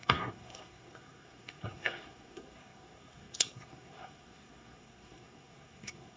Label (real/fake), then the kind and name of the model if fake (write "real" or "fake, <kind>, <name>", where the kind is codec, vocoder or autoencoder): fake, codec, SNAC